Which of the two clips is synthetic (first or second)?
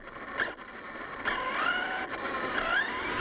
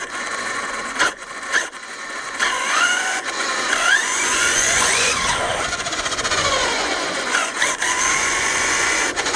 second